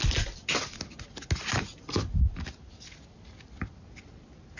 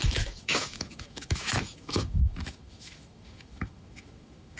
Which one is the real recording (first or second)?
first